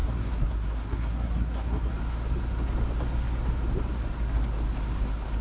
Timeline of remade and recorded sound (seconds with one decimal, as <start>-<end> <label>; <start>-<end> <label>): 0.0-1.9 remade; 1.9-5.4 recorded